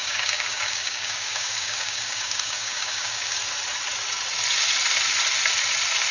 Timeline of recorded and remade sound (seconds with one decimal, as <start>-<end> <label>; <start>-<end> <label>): 0.0-3.4 remade; 3.4-6.1 recorded